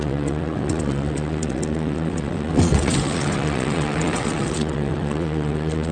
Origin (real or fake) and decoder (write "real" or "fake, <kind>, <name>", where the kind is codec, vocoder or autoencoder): fake, vocoder, WaveNeXt